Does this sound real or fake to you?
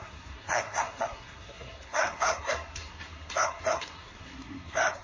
fake